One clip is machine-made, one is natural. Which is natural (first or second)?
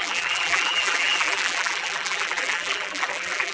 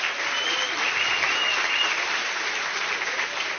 second